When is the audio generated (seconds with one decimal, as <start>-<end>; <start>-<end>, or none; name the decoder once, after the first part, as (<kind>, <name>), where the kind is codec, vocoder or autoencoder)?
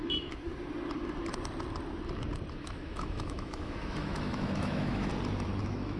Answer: 0.0-0.5 (autoencoder, DAC-VAE); 2.5-5.1; 5.6-6.0